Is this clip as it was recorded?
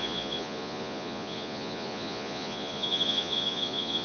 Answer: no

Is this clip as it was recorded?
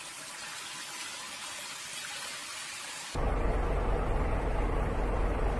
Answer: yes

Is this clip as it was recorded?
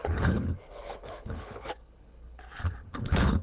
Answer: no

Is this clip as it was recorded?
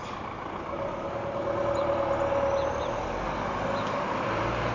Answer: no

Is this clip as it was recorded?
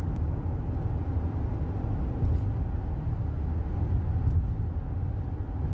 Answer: yes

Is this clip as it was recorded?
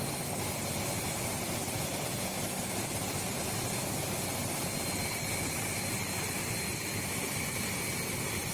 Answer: yes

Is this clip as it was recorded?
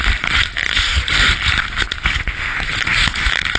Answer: yes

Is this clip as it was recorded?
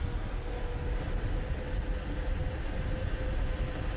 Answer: yes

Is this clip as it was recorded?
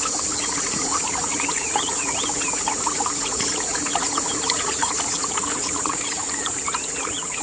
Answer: no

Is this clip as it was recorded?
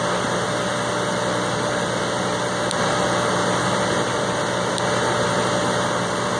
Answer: yes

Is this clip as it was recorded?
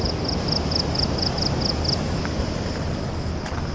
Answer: yes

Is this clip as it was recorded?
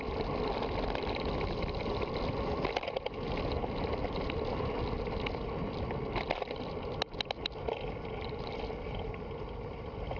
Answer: yes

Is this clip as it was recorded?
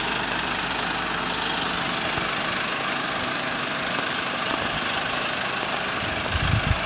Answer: yes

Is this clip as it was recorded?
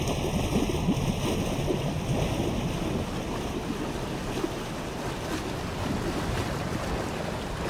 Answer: yes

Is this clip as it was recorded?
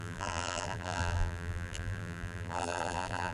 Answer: no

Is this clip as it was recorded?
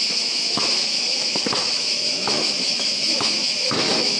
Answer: no